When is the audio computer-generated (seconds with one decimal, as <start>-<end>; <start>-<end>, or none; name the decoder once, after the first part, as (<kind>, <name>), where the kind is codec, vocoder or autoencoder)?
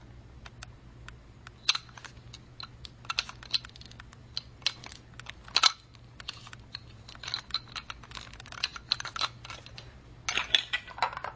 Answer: none